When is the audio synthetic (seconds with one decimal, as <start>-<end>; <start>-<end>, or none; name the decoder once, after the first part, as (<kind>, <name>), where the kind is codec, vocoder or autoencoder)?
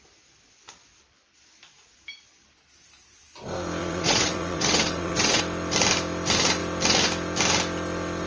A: 3.8-5.4 (vocoder, WaveNeXt)